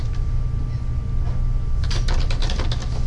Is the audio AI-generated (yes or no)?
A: no